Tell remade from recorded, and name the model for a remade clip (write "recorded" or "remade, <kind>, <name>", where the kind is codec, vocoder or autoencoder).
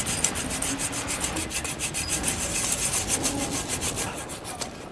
recorded